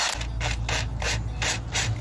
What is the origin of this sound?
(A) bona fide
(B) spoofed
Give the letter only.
A